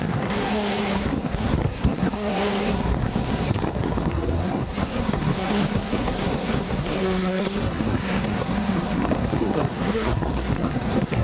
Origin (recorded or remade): remade